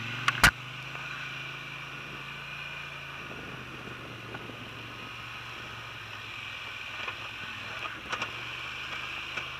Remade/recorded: recorded